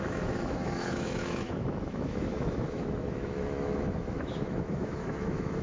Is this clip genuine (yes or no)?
no